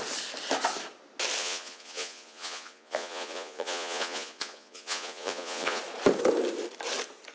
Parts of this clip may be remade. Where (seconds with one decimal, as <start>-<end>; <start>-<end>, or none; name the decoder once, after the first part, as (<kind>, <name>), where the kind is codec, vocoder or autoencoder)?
1.4-5.8 (vocoder, Vocos)